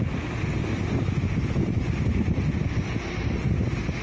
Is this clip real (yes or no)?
yes